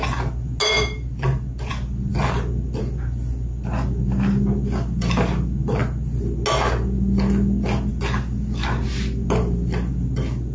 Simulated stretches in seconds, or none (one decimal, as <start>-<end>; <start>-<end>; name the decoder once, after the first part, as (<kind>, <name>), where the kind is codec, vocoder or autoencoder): none